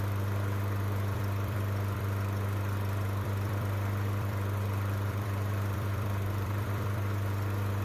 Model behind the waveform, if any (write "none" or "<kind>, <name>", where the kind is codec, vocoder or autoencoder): vocoder, BigVGAN v2